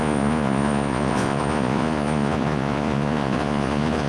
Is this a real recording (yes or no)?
no